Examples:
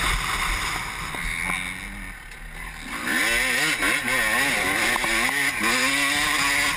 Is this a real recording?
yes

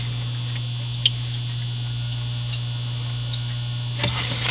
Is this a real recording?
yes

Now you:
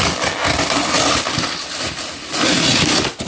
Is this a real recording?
yes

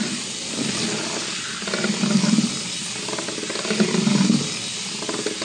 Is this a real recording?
yes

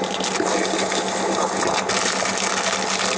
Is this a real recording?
yes